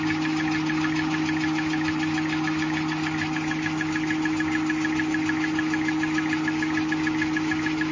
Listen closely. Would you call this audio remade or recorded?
recorded